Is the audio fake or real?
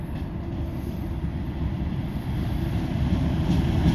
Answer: fake